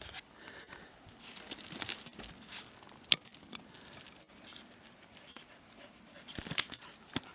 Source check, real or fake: real